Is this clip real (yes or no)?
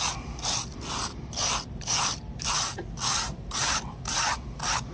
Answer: no